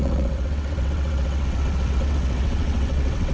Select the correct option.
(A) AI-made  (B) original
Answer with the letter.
A